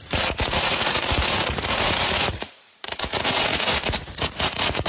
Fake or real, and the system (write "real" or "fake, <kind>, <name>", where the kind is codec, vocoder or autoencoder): fake, vocoder, Vocos